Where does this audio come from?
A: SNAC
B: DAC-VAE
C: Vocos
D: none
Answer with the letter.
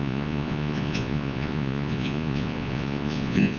C